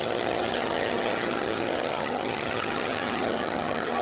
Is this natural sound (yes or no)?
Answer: no